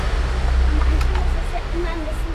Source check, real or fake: real